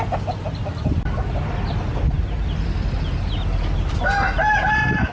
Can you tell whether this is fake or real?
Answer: real